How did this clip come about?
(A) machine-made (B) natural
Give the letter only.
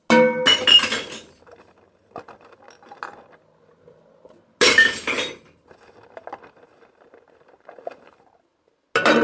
B